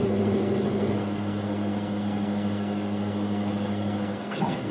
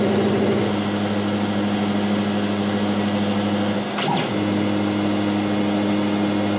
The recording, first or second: second